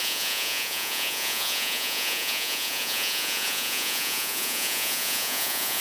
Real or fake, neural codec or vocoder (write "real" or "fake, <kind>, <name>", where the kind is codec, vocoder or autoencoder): fake, vocoder, Vocos